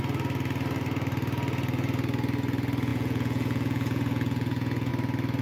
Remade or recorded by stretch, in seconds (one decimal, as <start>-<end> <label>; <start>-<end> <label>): 0.0-2.9 recorded; 2.9-4.9 remade; 4.9-5.4 recorded

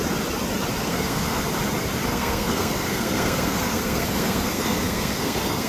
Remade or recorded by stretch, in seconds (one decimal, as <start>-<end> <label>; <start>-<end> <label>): 0.0-0.8 recorded; 0.8-1.4 remade; 1.4-2.1 recorded; 2.1-5.7 remade

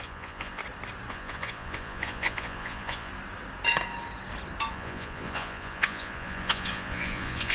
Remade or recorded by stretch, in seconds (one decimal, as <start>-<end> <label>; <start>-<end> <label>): 0.0-0.6 remade; 0.6-1.1 recorded; 1.1-3.1 remade; 3.1-4.7 recorded; 4.7-7.5 remade

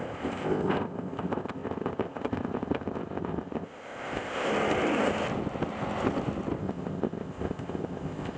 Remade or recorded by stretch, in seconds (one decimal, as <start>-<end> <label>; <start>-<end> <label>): 0.0-4.5 remade; 4.5-6.6 recorded; 6.6-8.4 remade